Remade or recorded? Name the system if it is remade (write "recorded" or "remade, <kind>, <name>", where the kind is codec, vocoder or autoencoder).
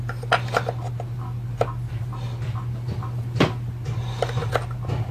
recorded